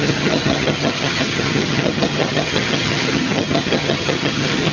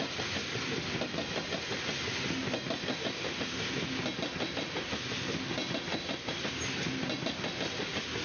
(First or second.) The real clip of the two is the second